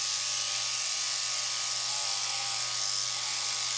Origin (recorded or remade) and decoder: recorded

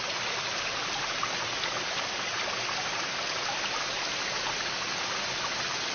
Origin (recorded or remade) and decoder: recorded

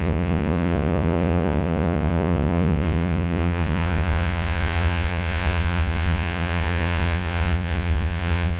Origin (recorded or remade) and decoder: remade, vocoder, Vocos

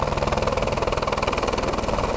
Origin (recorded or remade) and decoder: recorded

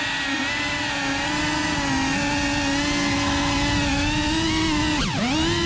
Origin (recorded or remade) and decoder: recorded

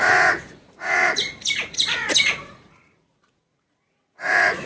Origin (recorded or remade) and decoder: remade, vocoder, Vocos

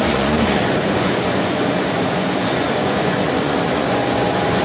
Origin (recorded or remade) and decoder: remade, vocoder, Vocos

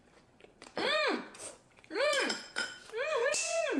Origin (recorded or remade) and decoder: remade, vocoder, Vocos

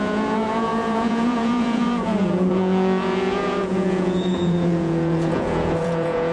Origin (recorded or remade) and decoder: remade, vocoder, Vocos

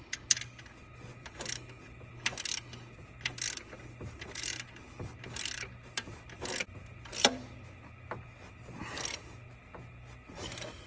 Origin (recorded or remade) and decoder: recorded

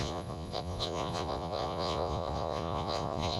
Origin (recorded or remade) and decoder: remade, vocoder, Vocos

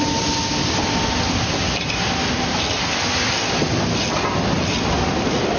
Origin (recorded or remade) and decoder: recorded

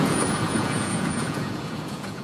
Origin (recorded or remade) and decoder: remade, vocoder, Vocos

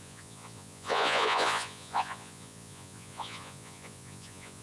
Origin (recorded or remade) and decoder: remade, vocoder, Vocos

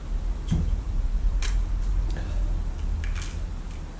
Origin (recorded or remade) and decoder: recorded